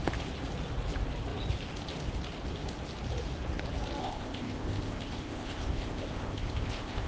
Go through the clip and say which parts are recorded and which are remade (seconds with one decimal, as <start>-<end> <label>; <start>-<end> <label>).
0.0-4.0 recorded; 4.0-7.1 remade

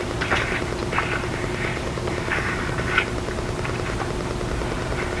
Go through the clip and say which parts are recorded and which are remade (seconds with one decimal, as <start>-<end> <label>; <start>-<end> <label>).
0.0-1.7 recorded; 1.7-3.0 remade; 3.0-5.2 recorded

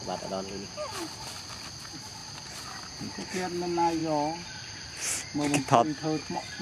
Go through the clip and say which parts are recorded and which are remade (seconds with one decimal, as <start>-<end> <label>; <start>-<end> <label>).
0.0-6.6 recorded

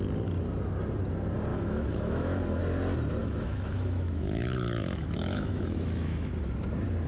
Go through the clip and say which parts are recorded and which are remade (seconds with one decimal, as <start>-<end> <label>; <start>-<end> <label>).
0.0-1.5 recorded; 1.5-2.6 remade; 2.6-3.2 recorded; 3.2-6.3 remade; 6.3-7.1 recorded

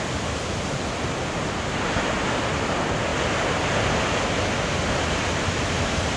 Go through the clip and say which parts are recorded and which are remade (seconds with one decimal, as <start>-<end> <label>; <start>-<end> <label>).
0.0-6.2 recorded

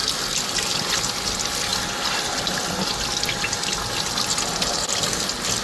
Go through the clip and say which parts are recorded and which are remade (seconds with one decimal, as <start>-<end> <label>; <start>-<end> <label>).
0.0-5.6 recorded